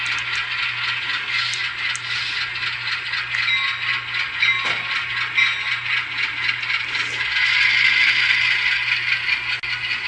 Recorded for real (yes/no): yes